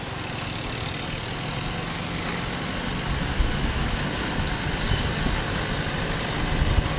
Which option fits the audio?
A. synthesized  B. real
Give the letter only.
B